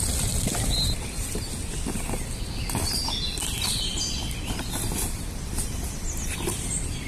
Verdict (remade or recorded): recorded